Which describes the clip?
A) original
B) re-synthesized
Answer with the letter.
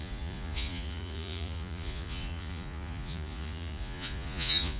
B